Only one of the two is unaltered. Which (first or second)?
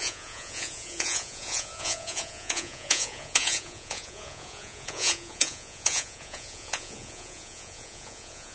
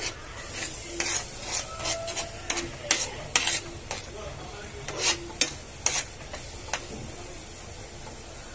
second